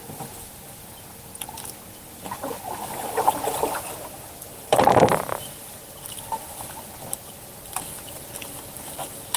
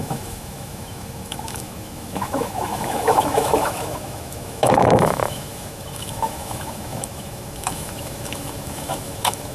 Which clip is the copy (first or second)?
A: second